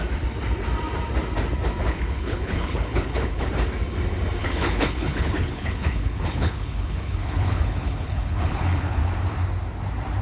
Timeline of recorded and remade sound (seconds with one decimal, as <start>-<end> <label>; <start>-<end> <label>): 0.0-1.8 recorded; 1.8-3.5 remade; 3.5-4.4 recorded; 4.4-9.0 remade; 9.0-10.2 recorded